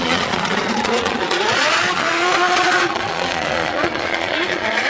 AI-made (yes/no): yes